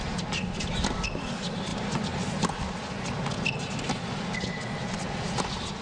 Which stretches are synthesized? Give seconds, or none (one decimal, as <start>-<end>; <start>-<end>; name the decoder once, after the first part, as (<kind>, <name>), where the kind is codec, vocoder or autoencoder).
none